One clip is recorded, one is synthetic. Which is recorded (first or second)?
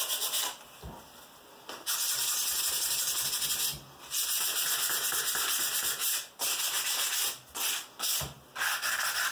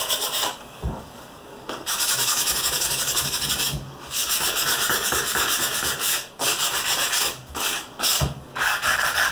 first